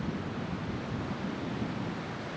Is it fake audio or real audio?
real